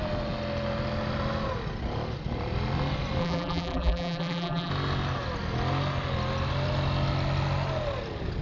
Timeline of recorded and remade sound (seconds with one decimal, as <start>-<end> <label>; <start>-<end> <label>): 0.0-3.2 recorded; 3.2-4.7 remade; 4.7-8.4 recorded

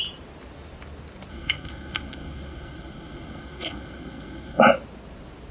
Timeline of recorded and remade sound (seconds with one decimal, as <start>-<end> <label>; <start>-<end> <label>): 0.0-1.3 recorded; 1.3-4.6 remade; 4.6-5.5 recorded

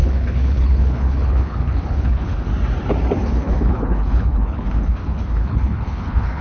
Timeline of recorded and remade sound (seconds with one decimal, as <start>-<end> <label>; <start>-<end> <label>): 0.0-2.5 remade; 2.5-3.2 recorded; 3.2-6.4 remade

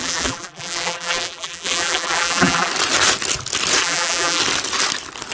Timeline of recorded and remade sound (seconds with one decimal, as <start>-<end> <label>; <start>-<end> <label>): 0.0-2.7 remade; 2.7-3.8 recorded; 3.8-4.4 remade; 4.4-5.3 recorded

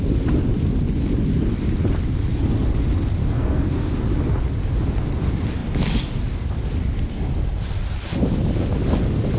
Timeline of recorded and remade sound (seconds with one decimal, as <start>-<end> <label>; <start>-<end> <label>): 0.0-3.2 recorded; 3.2-3.9 remade; 3.9-9.4 recorded

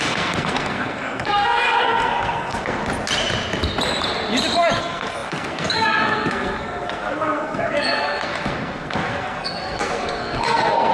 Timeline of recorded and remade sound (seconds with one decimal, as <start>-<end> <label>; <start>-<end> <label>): 0.0-2.8 remade; 2.8-4.8 recorded; 4.8-10.9 remade

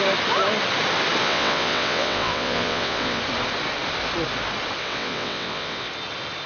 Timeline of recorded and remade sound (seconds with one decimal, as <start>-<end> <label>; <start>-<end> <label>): 0.0-1.2 recorded; 1.2-3.2 remade; 3.2-4.8 recorded; 4.8-5.9 remade; 5.9-6.5 recorded